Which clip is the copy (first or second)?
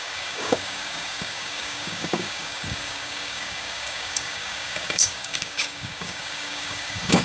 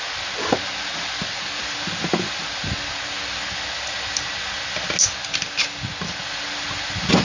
first